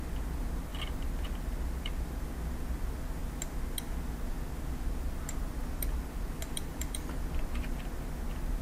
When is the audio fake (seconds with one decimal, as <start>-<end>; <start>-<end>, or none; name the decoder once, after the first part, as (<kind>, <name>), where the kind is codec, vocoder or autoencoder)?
none